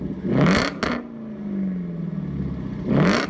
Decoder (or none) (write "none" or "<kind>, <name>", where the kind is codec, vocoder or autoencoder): none